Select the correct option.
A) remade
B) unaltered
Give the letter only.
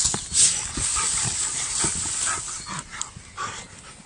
B